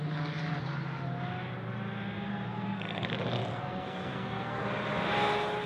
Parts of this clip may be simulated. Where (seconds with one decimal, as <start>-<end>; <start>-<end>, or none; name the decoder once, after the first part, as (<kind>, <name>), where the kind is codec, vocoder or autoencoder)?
2.3-3.1 (codec, SNAC); 3.5-4.6